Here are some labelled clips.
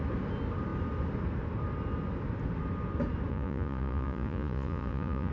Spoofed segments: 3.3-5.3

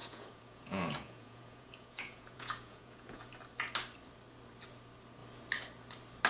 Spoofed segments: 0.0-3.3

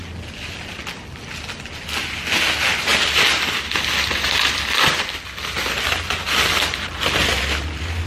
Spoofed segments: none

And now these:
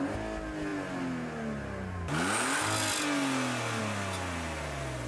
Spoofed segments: none

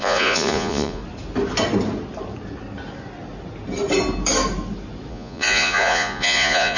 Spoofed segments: 0.0-1.0; 5.1-6.8

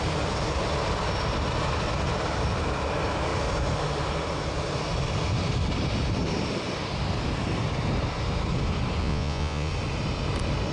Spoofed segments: 9.0-9.7